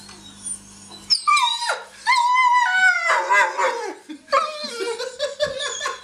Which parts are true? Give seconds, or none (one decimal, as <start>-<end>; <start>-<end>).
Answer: 0.0-6.0